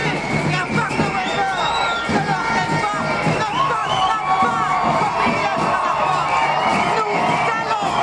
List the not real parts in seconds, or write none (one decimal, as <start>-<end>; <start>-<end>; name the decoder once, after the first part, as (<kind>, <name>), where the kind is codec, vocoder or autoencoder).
none